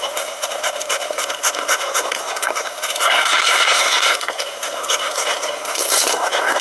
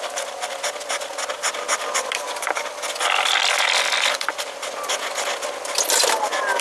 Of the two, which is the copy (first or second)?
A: first